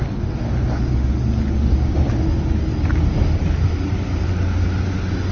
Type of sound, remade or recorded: recorded